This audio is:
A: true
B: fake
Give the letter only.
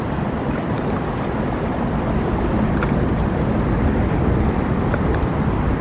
B